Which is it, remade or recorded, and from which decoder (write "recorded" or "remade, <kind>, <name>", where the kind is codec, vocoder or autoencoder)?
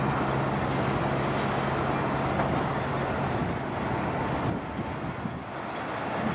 recorded